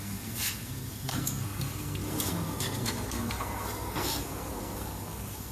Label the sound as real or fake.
fake